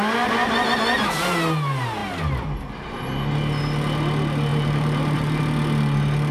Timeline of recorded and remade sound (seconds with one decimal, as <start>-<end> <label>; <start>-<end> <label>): 0.0-4.5 recorded; 4.5-5.4 remade; 5.4-6.3 recorded